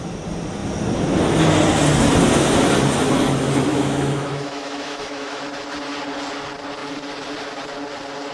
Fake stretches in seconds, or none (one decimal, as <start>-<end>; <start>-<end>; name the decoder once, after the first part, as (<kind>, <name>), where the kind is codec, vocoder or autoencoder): 3.7-5.4 (autoencoder, DAC-VAE)